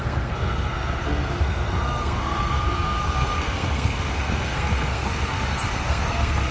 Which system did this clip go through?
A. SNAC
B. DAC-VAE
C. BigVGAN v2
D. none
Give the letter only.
A